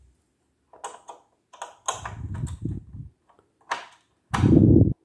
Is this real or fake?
real